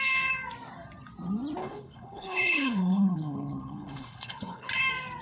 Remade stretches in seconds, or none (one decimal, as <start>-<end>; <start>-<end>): 1.6-4.7